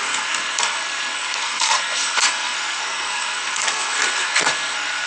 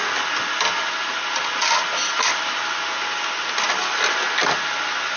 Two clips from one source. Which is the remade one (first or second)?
first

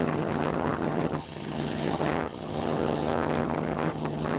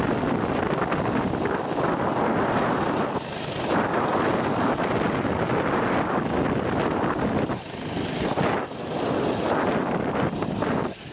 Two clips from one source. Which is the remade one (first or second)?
first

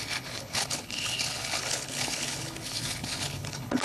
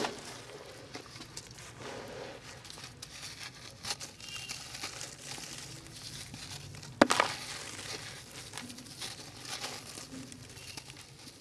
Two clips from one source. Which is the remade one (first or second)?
first